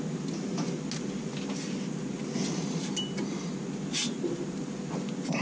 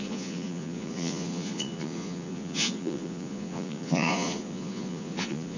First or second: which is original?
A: first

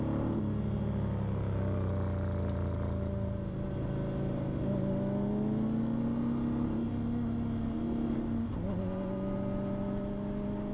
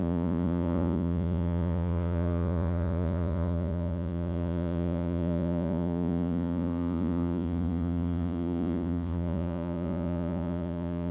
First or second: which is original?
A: first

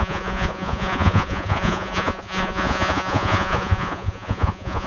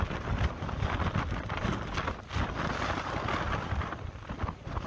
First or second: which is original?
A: second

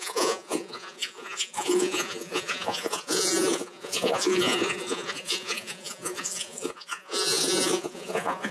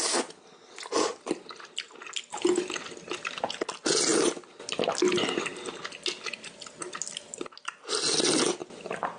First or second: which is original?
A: second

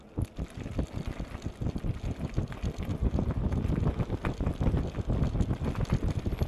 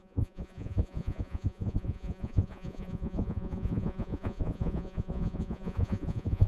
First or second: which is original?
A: first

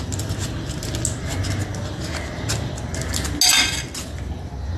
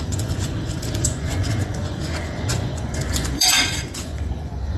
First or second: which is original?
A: first